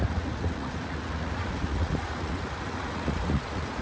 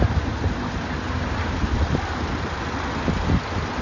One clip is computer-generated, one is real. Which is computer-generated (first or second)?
first